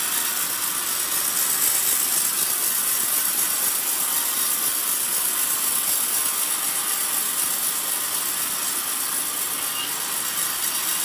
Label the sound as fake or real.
real